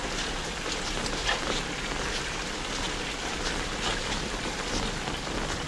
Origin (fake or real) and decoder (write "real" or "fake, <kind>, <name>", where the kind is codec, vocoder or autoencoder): real